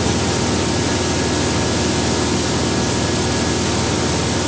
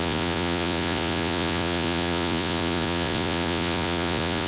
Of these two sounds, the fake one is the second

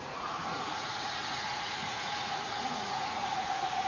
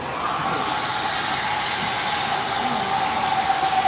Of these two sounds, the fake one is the first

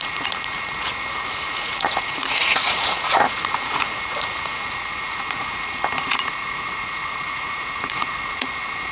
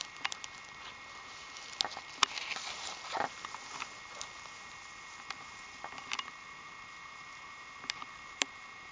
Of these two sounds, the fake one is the first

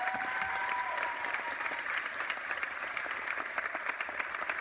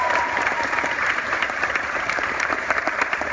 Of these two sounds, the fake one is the second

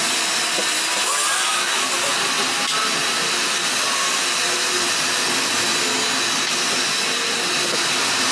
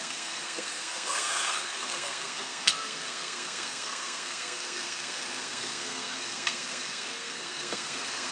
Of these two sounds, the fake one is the second